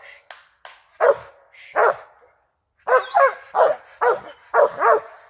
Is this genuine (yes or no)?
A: yes